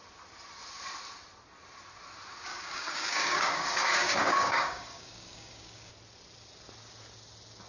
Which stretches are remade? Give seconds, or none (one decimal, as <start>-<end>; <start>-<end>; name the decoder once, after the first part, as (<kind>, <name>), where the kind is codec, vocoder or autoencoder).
2.5-5.9 (codec, DAC)